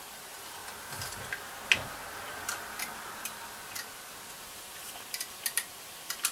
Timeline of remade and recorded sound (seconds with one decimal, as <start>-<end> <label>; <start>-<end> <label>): 0.0-0.6 remade; 0.6-4.4 recorded; 4.4-6.3 remade